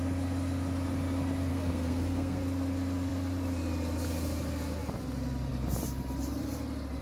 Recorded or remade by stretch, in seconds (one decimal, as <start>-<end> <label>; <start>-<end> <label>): 0.0-1.5 recorded; 1.5-2.4 remade; 2.4-7.0 recorded